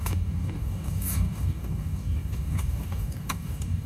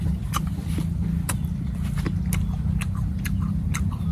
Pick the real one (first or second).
second